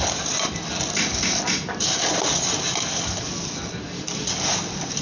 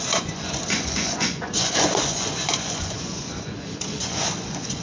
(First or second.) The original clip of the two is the first